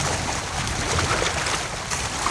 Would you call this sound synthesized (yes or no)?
no